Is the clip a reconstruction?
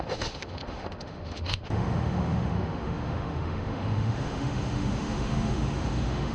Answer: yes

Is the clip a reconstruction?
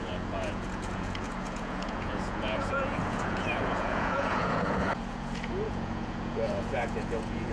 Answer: yes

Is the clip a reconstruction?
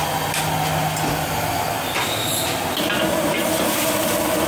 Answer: no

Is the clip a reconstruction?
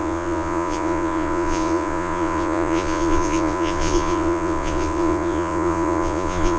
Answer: yes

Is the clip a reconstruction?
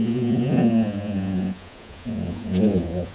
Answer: yes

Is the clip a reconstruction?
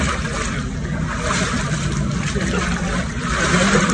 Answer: no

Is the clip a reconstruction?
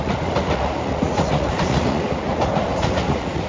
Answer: yes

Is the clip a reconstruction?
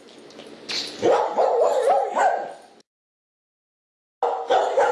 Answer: no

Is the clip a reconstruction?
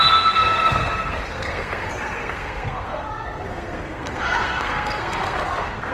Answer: yes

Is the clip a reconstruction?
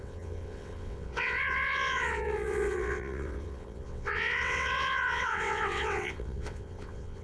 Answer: yes